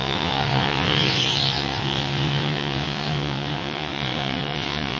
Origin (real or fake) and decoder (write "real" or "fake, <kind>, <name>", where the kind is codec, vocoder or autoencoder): fake, vocoder, WaveNeXt